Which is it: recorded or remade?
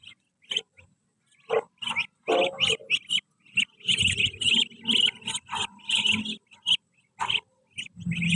recorded